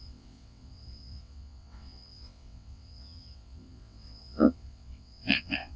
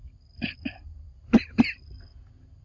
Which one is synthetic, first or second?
first